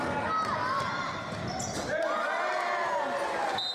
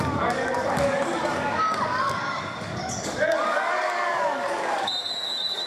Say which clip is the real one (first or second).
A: first